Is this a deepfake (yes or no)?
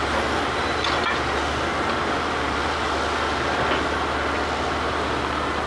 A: no